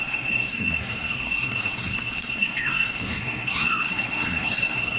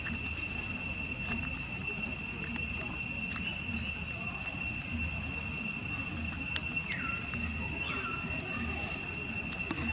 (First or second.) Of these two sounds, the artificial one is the first